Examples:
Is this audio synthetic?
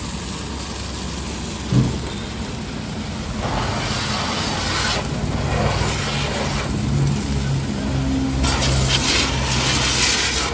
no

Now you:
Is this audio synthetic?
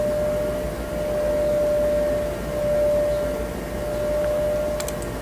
no